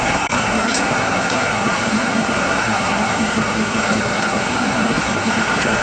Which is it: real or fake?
fake